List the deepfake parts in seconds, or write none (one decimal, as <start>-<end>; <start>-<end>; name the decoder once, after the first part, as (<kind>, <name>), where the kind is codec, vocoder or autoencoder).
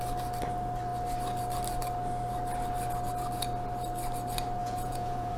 4.6-5.4 (vocoder, Vocos)